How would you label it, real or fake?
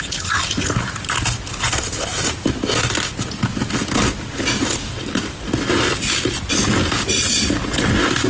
real